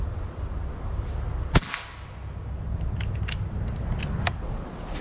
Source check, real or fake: real